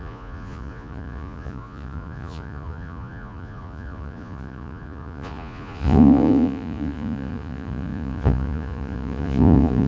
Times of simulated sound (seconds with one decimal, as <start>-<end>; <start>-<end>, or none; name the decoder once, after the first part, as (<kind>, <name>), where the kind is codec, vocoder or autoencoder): 0.0-9.9 (vocoder, Vocos)